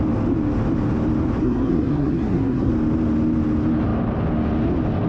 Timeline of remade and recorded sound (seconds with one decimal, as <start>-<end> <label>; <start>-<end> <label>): 0.0-1.4 recorded; 1.4-2.7 remade; 2.7-5.1 recorded

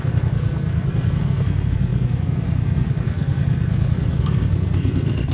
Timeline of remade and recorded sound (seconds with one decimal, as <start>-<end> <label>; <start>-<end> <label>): 0.0-5.3 remade

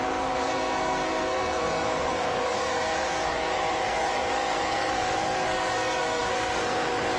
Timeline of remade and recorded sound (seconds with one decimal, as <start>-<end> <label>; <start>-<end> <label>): 0.0-7.2 remade

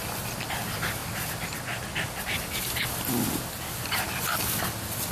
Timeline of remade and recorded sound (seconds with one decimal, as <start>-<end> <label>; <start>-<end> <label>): 0.0-5.1 recorded

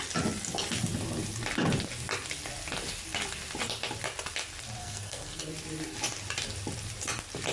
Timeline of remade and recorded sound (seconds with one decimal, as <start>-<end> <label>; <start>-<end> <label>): 0.0-4.8 recorded; 4.8-5.4 remade; 5.4-7.5 recorded

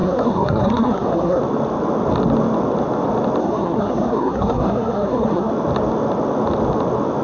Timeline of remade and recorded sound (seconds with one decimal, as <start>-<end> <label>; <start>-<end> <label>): 0.0-1.4 remade; 1.4-3.4 recorded; 3.4-5.5 remade; 5.5-7.2 recorded